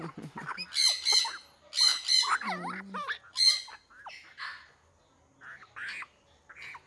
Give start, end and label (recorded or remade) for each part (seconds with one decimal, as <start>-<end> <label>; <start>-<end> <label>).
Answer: 0.0-6.9 recorded